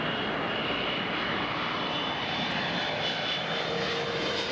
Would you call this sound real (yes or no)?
yes